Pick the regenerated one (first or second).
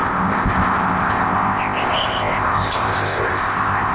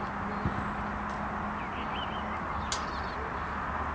first